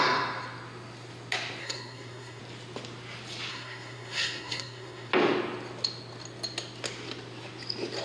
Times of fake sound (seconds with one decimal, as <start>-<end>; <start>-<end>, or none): 1.6-2.4; 3.5-5.1